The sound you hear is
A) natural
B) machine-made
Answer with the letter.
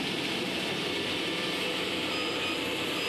B